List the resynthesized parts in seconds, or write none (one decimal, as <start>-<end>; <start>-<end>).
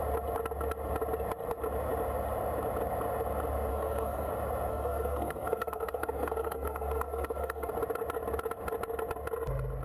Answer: 3.7-4.3; 4.7-7.7